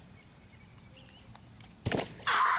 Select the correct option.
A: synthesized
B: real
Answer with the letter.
B